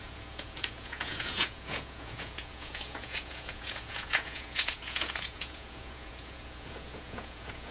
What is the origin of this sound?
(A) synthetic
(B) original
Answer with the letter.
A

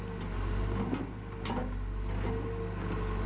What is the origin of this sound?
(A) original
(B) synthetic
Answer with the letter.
A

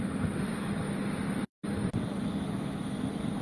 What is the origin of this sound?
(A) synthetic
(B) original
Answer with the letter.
B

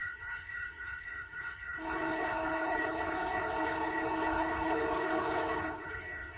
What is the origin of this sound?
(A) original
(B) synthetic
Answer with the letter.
B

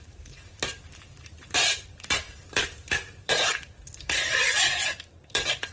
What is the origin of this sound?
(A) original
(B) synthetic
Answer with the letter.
B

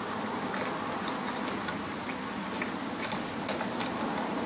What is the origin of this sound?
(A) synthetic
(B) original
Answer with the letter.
B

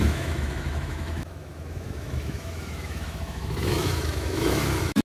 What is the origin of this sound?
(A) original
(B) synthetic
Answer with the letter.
B